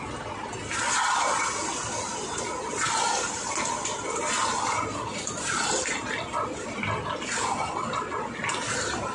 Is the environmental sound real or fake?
real